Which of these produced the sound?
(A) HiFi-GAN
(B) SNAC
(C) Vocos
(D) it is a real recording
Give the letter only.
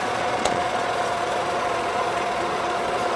C